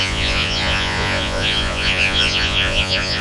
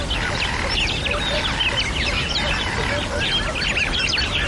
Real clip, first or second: second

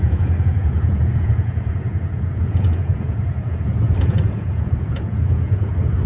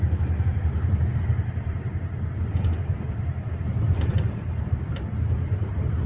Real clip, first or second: second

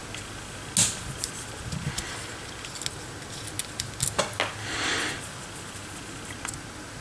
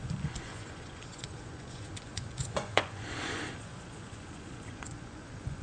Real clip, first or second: first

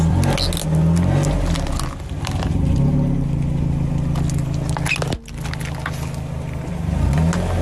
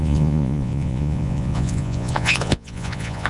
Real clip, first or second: first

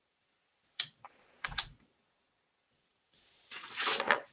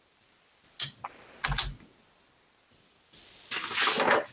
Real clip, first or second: second